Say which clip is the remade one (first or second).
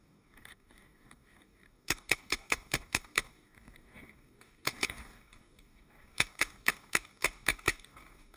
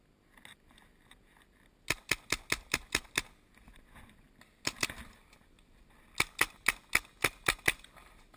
first